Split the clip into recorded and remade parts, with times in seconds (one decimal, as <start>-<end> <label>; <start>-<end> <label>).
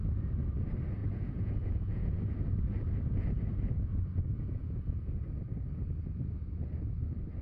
0.0-1.0 recorded; 1.0-2.2 remade; 2.2-4.3 recorded; 4.3-5.1 remade; 5.1-7.4 recorded